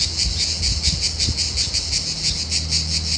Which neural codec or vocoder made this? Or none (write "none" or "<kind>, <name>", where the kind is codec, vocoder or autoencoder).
none